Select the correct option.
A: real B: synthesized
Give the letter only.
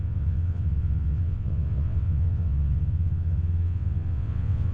B